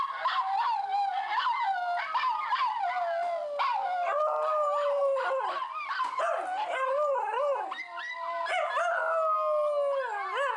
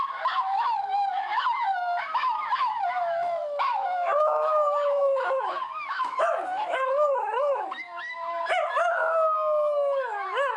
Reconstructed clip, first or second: second